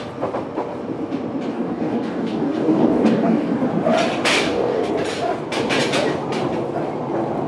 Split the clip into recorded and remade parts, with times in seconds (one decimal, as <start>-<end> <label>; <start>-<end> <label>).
0.0-1.5 recorded; 1.5-3.6 remade; 3.6-4.3 recorded; 4.3-4.9 remade; 4.9-7.5 recorded